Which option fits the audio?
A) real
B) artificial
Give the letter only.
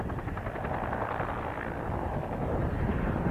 A